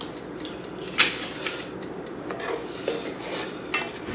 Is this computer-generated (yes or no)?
no